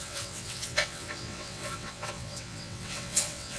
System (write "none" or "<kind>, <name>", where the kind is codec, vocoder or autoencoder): vocoder, WaveNeXt